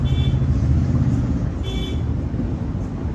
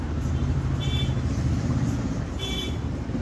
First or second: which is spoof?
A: second